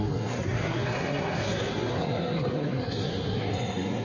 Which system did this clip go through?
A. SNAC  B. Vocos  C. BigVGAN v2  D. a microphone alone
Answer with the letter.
A